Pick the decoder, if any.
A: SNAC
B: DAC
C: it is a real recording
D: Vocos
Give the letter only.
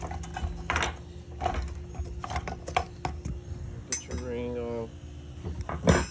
C